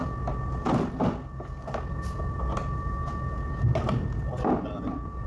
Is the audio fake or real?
real